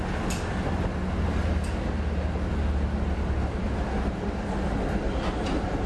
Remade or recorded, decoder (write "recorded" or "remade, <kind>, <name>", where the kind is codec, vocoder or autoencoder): recorded